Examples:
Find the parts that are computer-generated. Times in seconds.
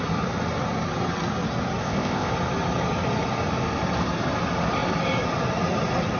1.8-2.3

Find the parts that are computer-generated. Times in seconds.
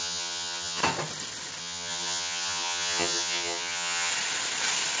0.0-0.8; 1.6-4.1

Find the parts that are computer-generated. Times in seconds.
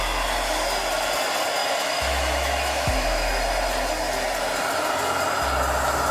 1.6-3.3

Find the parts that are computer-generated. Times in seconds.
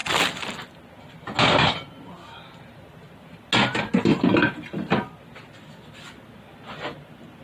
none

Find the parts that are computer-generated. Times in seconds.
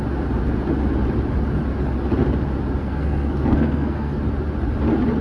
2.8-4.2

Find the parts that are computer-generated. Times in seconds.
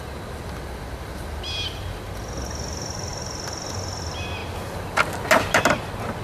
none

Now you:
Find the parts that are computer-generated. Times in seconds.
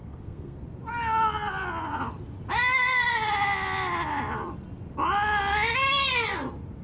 0.0-0.6